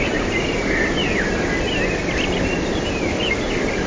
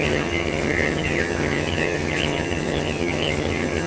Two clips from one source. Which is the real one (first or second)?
first